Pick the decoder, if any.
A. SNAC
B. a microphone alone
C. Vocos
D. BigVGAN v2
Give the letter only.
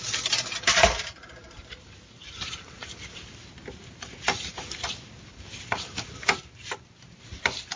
D